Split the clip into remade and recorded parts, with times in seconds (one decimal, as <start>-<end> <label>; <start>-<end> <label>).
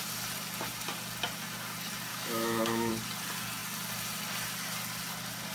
0.0-2.1 recorded; 2.1-2.9 remade; 2.9-5.5 recorded